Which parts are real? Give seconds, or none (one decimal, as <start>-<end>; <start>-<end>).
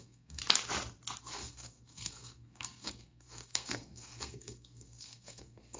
0.4-1.2